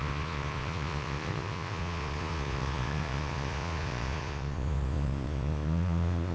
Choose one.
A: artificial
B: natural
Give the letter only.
A